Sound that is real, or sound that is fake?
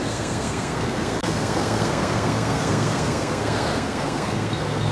fake